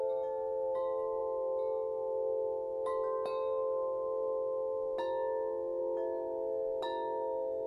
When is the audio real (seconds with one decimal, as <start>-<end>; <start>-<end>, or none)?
0.0-7.7